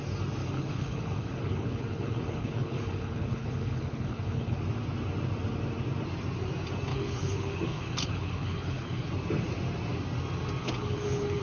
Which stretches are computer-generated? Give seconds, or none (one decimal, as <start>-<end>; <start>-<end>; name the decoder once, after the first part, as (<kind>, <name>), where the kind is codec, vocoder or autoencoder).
0.4-4.6 (codec, HILCodec); 6.9-9.1; 10.6-11.4

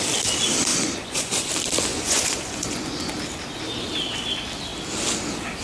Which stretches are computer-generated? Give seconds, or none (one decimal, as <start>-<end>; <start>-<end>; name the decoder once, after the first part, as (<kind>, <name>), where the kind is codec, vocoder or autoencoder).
0.7-1.5 (vocoder, Vocos); 1.9-3.1

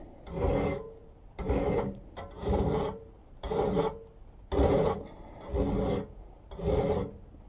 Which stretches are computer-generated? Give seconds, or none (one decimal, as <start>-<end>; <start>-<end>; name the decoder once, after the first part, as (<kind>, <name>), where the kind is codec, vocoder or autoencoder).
1.0-3.5 (vocoder, BigVGAN v2)

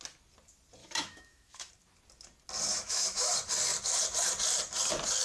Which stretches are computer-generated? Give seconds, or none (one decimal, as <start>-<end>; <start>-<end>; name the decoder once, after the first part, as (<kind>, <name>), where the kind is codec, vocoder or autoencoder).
0.8-1.7 (autoencoder, DAC-VAE); 2.7-3.3

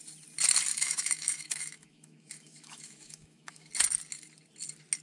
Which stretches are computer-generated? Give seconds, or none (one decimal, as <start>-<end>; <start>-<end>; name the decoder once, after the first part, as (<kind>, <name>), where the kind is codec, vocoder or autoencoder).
0.7-3.7 (autoencoder, DAC-VAE)